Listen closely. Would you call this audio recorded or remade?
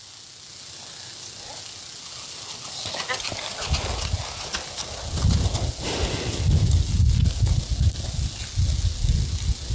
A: recorded